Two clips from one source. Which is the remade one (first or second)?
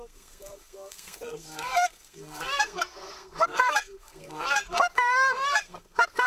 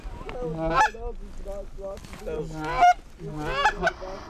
first